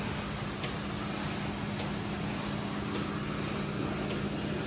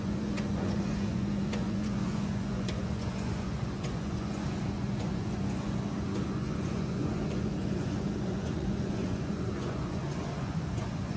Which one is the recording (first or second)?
first